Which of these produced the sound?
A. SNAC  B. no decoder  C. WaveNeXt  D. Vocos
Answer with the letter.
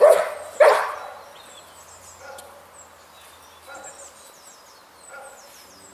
B